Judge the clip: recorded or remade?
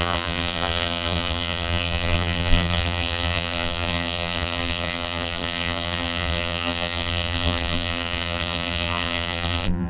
remade